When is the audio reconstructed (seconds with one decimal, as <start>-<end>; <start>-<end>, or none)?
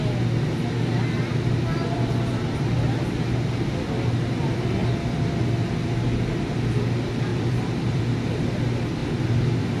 4.8-5.4; 7.3-8.0